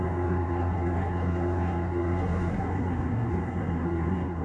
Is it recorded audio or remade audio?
remade